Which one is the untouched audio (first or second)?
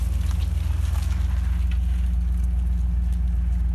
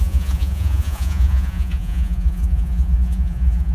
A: first